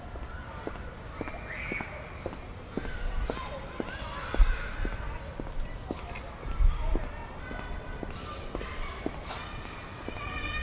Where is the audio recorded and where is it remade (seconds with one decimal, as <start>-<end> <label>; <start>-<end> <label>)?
0.0-10.6 recorded